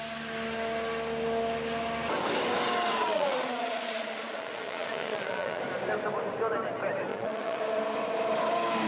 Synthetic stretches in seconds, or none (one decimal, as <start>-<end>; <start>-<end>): 3.0-5.6; 7.1-7.6